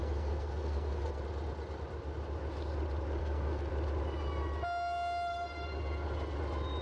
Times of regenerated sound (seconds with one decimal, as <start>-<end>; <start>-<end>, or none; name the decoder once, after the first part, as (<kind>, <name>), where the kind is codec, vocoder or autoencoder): 0.0-1.2 (codec, SNAC); 3.2-3.7